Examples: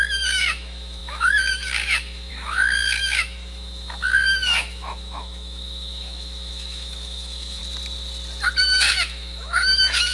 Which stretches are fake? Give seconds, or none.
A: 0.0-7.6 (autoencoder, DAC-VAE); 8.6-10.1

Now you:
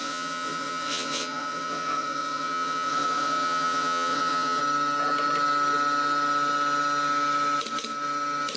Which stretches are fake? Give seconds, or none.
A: 0.0-4.6 (vocoder, WaveNeXt)

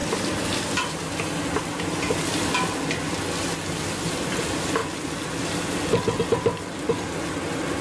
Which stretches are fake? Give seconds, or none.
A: none